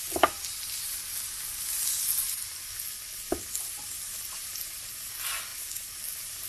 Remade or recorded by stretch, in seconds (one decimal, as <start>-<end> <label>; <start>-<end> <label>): 0.0-6.5 recorded